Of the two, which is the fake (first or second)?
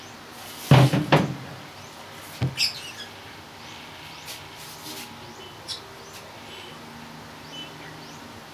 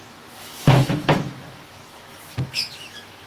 second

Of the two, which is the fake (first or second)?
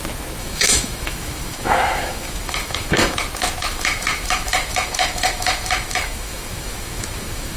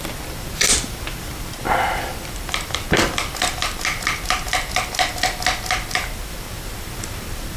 first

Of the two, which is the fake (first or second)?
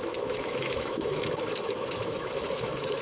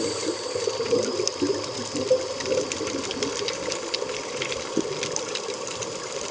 first